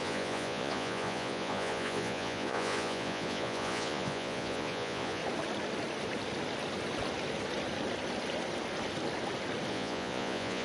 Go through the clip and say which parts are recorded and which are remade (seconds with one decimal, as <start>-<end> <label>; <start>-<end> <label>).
0.0-5.2 remade; 5.2-9.7 recorded; 9.7-10.6 remade